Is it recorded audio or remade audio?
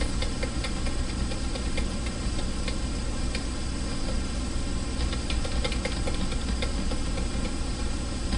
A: recorded